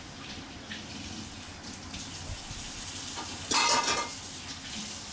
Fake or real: real